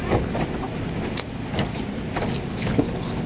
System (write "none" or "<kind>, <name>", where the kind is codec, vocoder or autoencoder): none